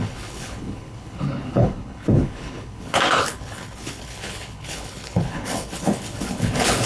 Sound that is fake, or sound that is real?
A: fake